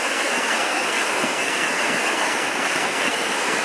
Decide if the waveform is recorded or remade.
remade